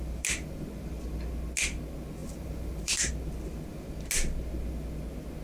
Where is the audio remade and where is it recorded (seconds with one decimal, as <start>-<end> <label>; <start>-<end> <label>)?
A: 0.0-2.2 recorded; 2.2-3.1 remade; 3.1-5.4 recorded